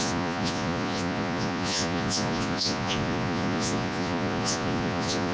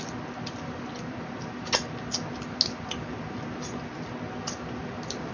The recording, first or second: second